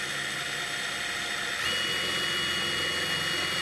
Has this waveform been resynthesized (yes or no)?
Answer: no